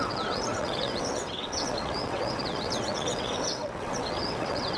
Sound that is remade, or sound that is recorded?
remade